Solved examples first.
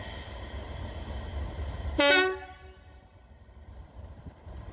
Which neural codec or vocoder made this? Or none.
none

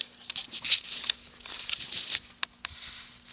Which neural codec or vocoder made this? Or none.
none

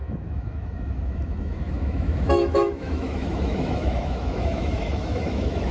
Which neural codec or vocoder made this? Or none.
autoencoder, DAC-VAE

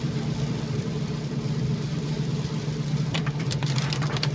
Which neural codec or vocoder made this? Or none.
vocoder, BigVGAN v2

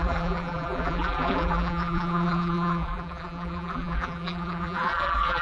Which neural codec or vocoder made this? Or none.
vocoder, BigVGAN v2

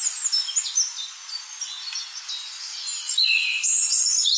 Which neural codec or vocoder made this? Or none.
none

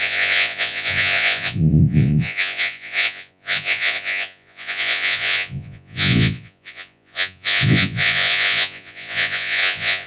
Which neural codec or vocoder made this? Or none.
vocoder, Vocos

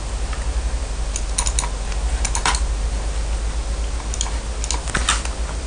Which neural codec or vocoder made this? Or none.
none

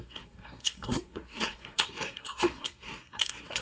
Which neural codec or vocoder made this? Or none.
codec, SNAC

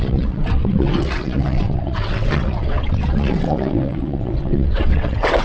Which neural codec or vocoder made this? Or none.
vocoder, WaveNeXt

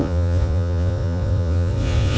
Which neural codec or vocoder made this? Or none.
vocoder, Vocos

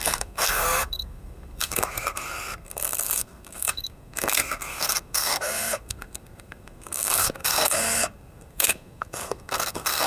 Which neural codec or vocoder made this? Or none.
codec, SNAC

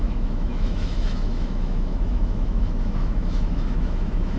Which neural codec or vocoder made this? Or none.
autoencoder, DAC-VAE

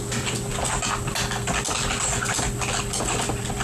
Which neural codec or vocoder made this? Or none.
none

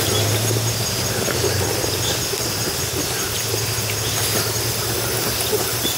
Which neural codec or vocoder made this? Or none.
none